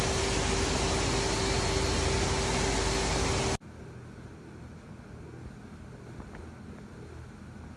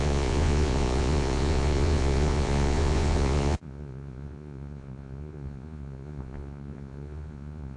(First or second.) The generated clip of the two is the second